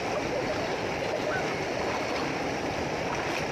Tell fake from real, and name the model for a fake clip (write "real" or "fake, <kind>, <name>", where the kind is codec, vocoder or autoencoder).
real